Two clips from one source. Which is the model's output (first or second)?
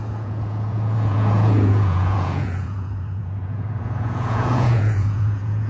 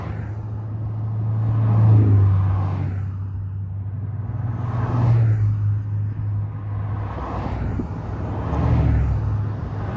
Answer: first